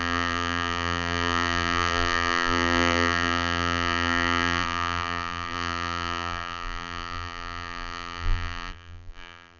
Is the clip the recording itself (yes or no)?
no